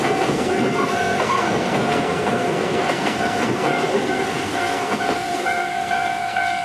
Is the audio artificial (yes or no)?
yes